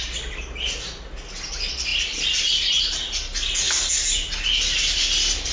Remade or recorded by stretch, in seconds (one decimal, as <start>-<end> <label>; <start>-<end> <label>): 0.0-5.5 recorded